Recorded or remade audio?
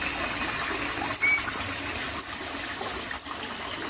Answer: recorded